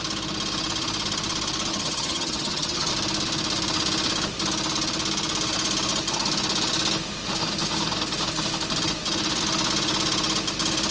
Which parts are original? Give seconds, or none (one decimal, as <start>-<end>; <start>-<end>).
0.0-1.7; 2.9-10.9